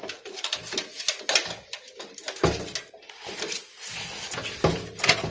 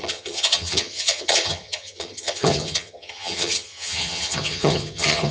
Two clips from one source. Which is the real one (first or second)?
first